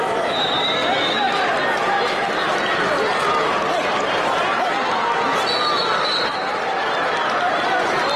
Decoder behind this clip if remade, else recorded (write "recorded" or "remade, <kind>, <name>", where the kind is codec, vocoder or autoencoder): recorded